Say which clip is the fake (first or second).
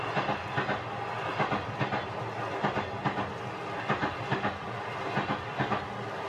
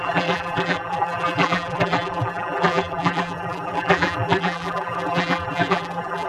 second